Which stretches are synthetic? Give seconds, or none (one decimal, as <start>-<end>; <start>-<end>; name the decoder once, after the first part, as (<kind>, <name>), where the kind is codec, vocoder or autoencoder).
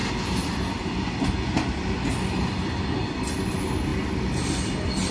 none